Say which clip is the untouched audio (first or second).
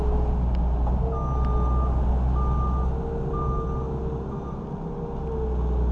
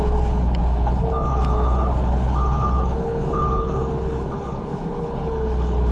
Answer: first